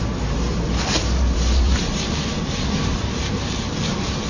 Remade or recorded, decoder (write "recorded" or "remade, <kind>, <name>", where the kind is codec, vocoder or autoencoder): remade, vocoder, BigVGAN v2